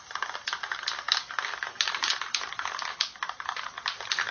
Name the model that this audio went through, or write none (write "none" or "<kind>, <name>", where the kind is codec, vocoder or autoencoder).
none